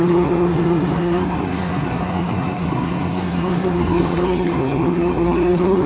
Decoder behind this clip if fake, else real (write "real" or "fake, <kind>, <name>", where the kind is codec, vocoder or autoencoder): fake, codec, SNAC